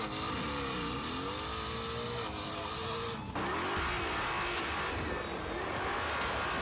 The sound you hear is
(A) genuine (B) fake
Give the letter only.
A